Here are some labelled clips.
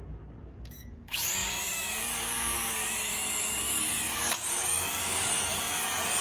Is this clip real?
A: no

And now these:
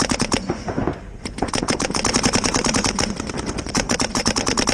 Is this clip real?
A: no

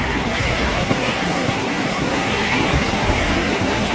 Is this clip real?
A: no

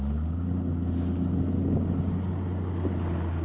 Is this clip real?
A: yes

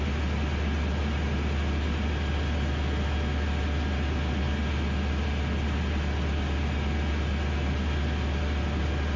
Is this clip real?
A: yes